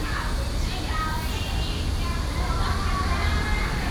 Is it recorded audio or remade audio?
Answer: recorded